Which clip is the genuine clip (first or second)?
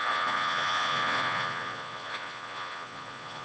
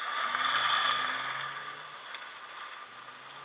second